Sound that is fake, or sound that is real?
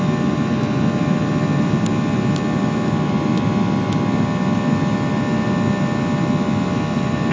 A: real